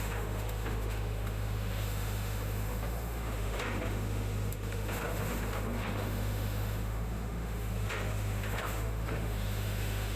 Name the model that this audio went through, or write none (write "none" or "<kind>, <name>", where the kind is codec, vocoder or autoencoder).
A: autoencoder, DAC-VAE